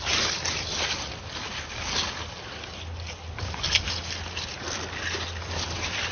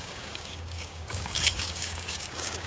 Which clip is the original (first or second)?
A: first